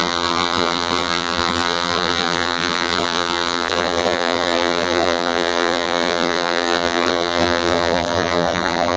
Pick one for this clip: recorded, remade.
remade